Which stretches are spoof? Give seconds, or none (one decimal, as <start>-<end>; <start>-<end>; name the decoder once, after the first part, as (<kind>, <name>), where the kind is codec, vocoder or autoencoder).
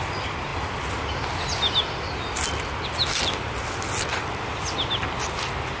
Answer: none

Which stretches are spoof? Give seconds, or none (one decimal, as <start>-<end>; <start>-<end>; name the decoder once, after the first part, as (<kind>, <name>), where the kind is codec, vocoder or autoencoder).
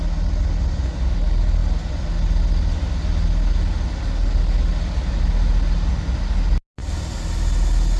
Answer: none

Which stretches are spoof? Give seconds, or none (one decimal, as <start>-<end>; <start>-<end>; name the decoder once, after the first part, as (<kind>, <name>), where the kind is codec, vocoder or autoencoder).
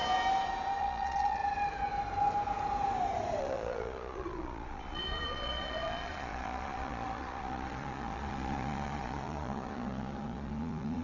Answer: 0.8-1.4 (vocoder, Vocos); 3.4-11.0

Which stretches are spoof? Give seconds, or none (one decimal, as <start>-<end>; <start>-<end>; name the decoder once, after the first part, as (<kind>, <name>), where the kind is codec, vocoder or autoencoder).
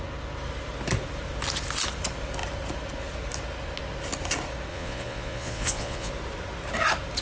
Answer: 4.7-6.1 (vocoder, Vocos)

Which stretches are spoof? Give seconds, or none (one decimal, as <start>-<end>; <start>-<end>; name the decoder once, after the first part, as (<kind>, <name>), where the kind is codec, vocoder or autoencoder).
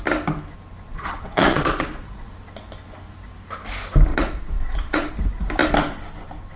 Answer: 0.9-2.3 (vocoder, Vocos); 4.1-5.1